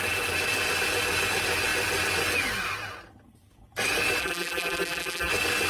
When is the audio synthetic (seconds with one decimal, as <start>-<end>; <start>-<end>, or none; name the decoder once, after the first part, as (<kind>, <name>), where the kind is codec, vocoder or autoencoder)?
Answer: 4.2-5.3 (vocoder, BigVGAN v2)